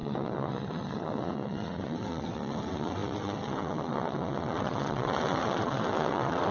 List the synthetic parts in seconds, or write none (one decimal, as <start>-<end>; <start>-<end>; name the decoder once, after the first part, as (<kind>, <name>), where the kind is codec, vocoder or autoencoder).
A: 0.0-6.5 (vocoder, WaveNeXt)